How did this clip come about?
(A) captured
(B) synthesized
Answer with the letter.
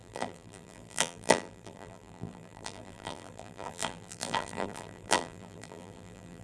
B